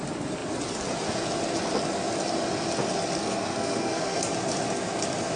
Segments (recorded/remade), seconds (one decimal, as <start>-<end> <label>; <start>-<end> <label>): 0.0-3.2 recorded; 3.2-4.2 remade; 4.2-5.4 recorded